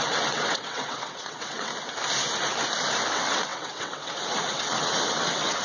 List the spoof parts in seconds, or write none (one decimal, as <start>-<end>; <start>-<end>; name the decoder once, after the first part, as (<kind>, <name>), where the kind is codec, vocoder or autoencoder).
0.0-1.7 (vocoder, WaveNeXt); 3.1-5.6